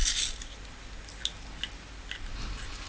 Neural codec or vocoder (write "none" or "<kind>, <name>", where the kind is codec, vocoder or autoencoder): none